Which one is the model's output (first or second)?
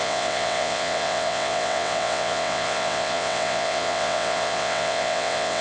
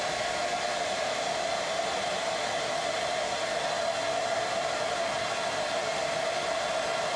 first